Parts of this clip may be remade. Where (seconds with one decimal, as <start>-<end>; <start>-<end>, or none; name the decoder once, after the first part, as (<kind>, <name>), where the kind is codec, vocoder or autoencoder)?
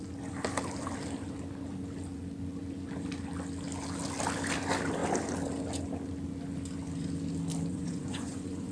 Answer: 7.7-8.7 (vocoder, Vocos)